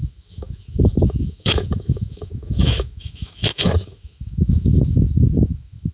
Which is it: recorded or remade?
remade